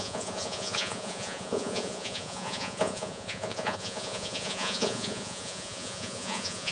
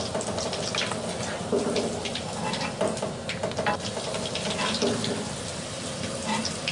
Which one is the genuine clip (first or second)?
second